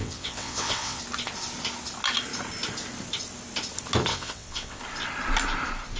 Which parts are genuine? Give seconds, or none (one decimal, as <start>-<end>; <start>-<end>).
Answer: 1.0-4.1; 4.8-6.0